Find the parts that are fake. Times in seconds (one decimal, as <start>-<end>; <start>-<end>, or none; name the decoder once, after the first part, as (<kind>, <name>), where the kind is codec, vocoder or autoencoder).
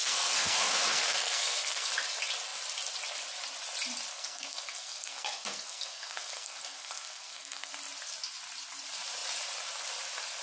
0.0-1.9 (codec, SNAC); 4.1-7.7